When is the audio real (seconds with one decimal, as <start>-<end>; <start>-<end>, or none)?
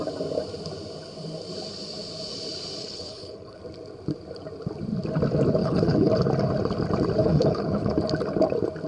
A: 0.0-2.8; 3.6-5.6; 6.1-7.2; 7.9-8.9